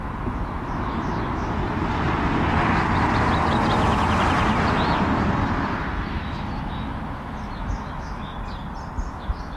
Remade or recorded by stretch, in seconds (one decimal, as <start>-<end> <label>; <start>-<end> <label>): 0.0-1.6 remade; 1.6-5.9 recorded; 5.9-8.3 remade; 8.3-9.1 recorded; 9.1-9.6 remade